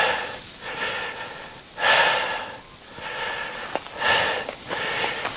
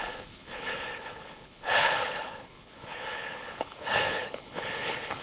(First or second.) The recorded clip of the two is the first